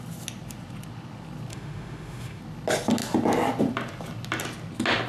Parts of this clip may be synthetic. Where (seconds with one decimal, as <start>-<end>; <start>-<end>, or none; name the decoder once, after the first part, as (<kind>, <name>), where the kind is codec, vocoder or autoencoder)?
1.5-2.4 (autoencoder, DAC-VAE)